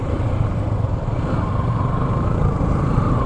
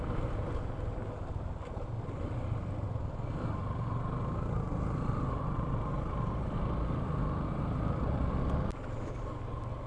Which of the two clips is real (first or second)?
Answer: second